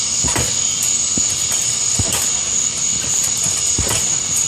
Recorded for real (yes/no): yes